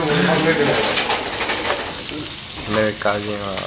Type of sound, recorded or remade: recorded